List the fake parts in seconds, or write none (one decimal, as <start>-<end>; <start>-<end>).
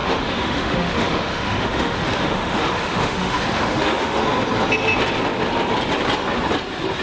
0.0-4.2